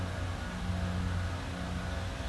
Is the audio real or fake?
real